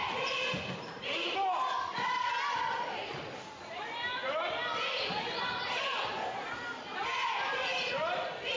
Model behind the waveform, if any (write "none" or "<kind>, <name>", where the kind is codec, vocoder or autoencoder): none